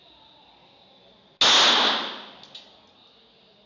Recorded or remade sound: recorded